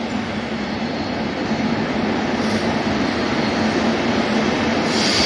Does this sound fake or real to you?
real